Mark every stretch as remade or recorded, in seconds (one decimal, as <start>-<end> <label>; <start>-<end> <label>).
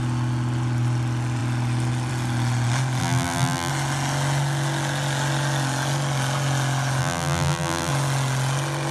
0.0-3.0 recorded; 3.0-3.7 remade; 3.7-7.0 recorded; 7.0-7.9 remade; 7.9-8.9 recorded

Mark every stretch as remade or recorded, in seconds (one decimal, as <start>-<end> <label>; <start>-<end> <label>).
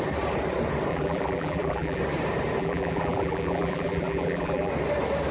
0.0-0.9 recorded; 0.9-2.0 remade; 2.0-2.6 recorded; 2.6-4.7 remade; 4.7-5.3 recorded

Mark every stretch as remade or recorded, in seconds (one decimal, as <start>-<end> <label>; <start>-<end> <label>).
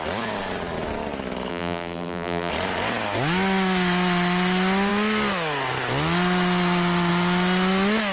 0.0-1.5 recorded; 1.5-2.5 remade; 2.5-8.1 recorded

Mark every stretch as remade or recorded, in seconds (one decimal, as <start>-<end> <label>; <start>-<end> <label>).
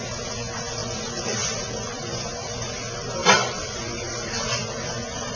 0.0-0.8 recorded; 0.8-2.8 remade; 2.8-3.2 recorded; 3.2-4.9 remade; 4.9-5.4 recorded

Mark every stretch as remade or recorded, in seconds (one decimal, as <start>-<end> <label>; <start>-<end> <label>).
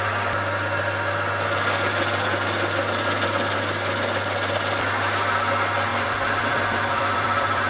0.0-5.9 recorded; 5.9-7.7 remade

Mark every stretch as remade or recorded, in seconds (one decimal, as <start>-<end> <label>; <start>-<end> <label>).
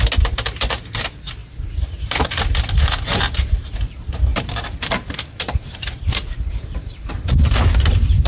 0.0-1.4 recorded; 1.4-2.4 remade; 2.4-4.3 recorded; 4.3-7.1 remade; 7.1-8.3 recorded